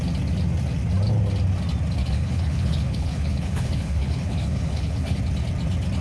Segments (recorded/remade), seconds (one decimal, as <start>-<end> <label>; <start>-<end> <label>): 0.0-2.0 recorded; 2.0-5.2 remade; 5.2-6.0 recorded

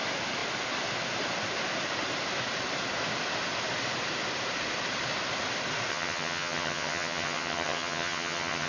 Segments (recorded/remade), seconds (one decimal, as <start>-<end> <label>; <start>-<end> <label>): 0.0-5.9 recorded; 5.9-8.7 remade

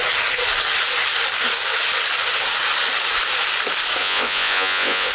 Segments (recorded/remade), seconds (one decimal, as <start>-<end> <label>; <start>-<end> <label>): 0.0-4.0 recorded; 4.0-5.1 remade